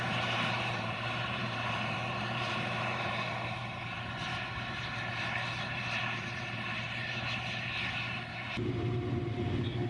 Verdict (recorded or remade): remade